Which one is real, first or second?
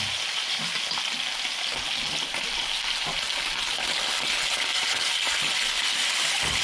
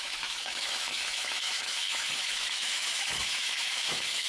first